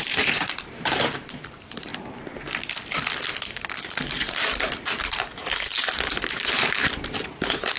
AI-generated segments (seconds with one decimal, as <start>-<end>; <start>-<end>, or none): 0.0-1.9; 4.6-5.7; 6.5-7.8